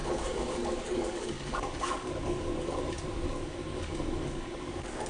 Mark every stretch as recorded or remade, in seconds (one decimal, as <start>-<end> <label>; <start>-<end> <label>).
0.0-5.1 remade